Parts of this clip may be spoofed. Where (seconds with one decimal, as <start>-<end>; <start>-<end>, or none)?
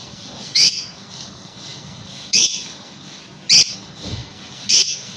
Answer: 0.0-3.2; 3.7-5.2